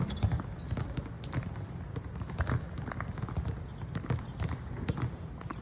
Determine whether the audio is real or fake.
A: real